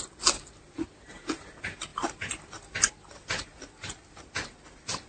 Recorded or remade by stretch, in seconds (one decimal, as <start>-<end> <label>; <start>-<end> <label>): 0.0-1.9 recorded; 1.9-5.1 remade